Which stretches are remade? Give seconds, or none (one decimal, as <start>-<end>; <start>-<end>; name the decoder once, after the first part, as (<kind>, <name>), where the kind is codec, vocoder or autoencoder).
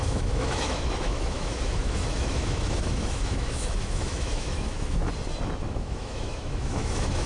0.0-5.0 (autoencoder, DAC-VAE); 5.6-7.3